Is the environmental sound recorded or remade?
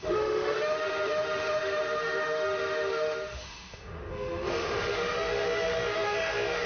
remade